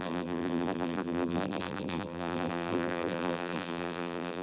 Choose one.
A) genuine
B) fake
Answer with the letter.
B